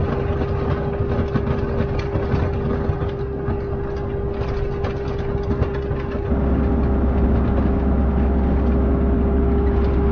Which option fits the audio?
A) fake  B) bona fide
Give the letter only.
B